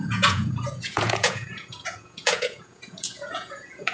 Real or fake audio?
fake